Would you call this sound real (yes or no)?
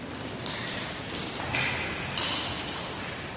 yes